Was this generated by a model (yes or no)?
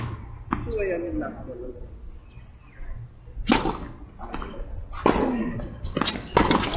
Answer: no